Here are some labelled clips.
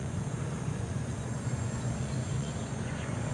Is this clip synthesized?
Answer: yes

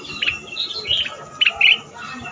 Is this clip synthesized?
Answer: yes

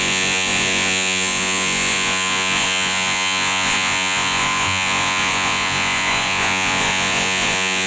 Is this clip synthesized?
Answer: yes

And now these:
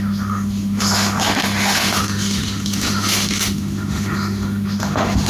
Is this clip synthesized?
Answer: yes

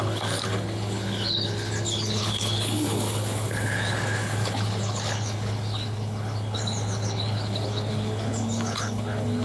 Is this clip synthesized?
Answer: yes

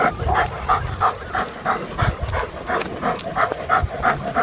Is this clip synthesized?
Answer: no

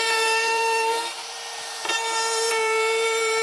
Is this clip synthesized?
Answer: yes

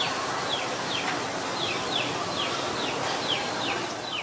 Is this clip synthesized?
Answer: no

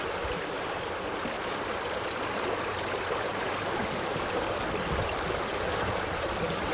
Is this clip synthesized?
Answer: yes